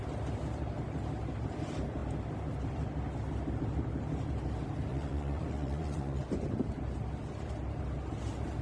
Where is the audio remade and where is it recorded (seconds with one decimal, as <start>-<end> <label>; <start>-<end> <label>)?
0.0-4.9 recorded; 4.9-6.2 remade; 6.2-8.6 recorded